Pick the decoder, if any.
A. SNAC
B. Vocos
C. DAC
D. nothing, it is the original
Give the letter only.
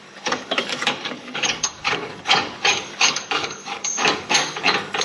C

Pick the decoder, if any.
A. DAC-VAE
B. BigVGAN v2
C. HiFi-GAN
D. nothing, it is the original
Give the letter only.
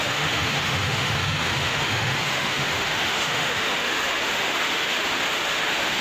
A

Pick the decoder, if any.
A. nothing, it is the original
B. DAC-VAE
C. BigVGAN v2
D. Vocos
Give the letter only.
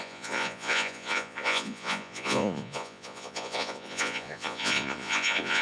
D